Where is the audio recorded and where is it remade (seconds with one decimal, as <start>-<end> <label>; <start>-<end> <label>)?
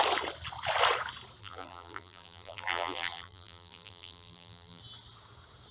0.0-1.4 recorded; 1.4-4.8 remade; 4.8-5.7 recorded